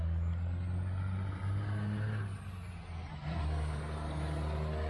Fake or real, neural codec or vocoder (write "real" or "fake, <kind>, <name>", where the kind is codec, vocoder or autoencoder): real